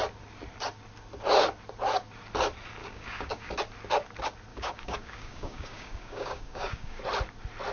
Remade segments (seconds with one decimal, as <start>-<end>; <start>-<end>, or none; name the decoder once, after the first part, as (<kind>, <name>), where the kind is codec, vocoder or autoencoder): 2.8-3.5 (codec, DAC); 4.5-7.0